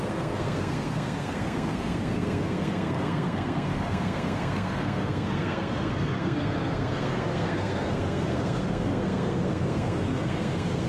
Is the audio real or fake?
fake